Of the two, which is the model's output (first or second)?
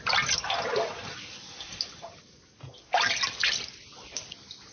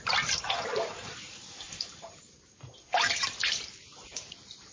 second